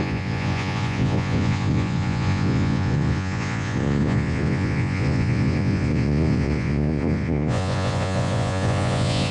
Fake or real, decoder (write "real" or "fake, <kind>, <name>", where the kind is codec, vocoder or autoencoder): fake, vocoder, Vocos